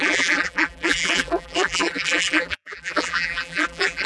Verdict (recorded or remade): remade